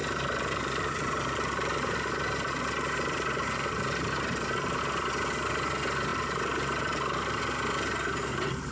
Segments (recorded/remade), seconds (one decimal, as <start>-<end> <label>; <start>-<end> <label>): 0.0-4.8 remade; 4.8-6.1 recorded; 6.1-7.4 remade; 7.4-8.7 recorded